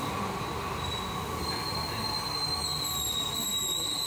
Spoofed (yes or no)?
no